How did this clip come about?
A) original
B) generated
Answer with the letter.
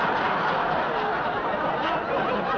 A